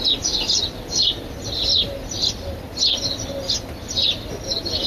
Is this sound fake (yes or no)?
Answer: no